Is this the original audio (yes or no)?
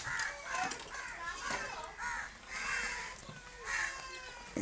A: yes